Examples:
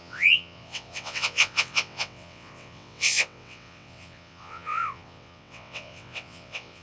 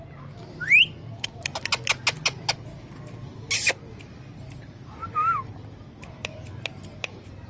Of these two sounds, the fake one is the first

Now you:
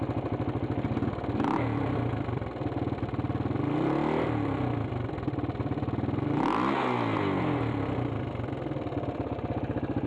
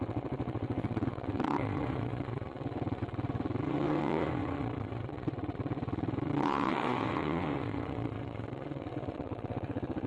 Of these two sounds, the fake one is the second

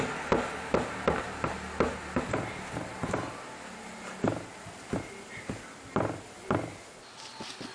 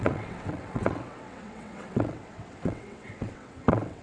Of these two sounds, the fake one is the second